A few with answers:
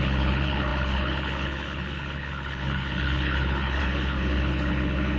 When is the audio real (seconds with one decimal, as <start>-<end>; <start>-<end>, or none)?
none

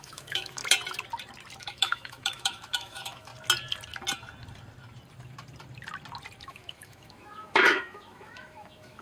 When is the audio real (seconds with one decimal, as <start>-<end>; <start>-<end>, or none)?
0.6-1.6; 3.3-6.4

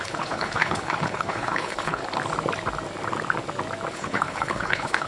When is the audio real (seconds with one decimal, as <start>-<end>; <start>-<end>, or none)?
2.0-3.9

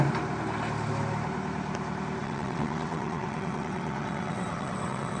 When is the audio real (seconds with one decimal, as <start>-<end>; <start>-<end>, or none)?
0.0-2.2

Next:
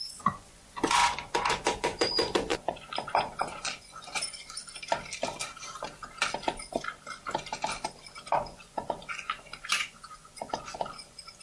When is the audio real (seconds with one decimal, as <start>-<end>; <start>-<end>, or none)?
4.6-8.4

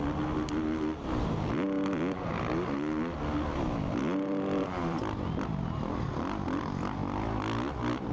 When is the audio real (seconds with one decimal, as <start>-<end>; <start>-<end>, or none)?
0.0-4.0; 5.0-8.1

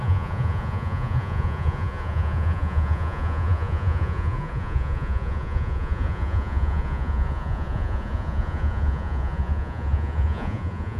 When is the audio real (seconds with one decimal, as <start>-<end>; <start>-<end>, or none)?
none

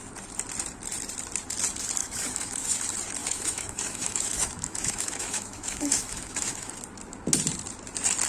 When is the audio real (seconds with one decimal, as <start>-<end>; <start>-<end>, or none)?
0.0-2.0; 2.8-3.2; 6.7-8.3